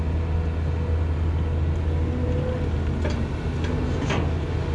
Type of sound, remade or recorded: recorded